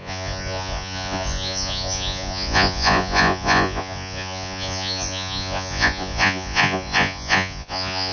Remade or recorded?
remade